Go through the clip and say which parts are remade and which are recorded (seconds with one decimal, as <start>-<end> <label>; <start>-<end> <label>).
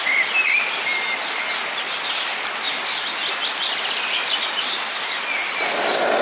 0.0-6.2 recorded